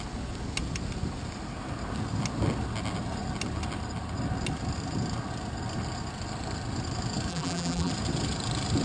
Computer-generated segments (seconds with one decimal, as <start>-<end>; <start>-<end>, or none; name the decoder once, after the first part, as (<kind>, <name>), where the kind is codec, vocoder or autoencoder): 7.3-7.9 (vocoder, BigVGAN v2)